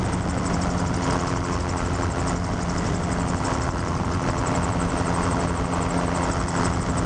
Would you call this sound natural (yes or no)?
yes